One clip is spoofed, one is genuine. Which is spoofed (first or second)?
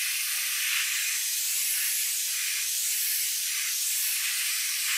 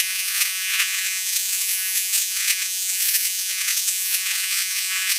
second